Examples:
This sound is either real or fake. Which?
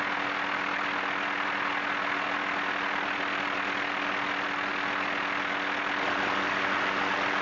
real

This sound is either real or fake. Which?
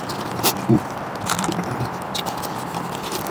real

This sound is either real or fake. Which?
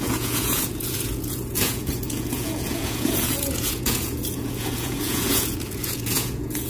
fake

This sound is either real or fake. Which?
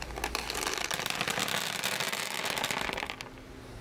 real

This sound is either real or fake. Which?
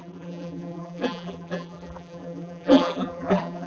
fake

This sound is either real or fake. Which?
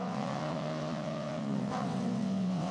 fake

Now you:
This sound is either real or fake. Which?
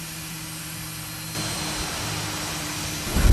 real